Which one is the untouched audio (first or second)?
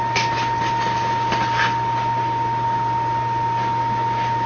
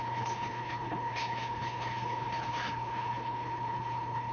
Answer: first